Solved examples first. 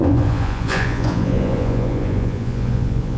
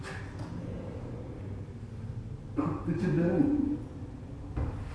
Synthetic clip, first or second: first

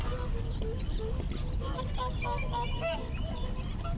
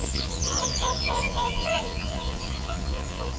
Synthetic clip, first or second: second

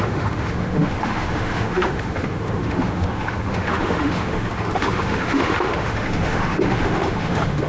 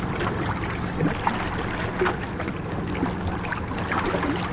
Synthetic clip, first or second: first